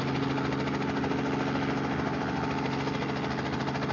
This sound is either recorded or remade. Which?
recorded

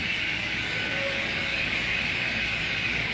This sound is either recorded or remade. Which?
remade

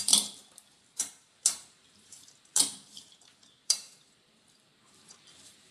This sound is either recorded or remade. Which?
remade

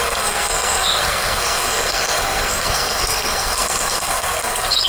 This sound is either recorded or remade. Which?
remade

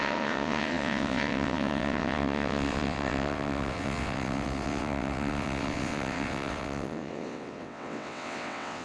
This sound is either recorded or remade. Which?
remade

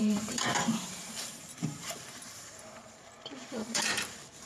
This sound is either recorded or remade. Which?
remade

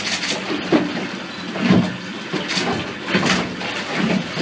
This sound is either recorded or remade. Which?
recorded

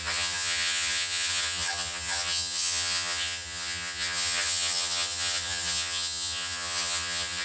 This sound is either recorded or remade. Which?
remade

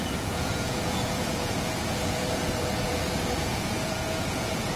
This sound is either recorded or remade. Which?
remade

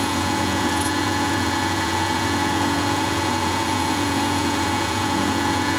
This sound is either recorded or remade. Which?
remade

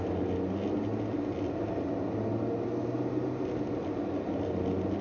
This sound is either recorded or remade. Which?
recorded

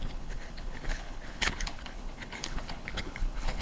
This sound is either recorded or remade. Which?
remade